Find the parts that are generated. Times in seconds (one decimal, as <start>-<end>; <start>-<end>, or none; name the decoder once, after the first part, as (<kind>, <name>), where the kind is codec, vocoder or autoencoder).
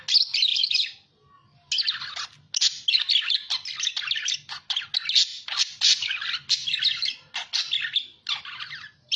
none